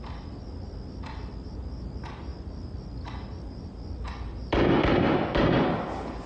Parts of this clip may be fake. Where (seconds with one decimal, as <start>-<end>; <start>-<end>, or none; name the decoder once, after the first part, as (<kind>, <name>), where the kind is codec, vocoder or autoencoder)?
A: none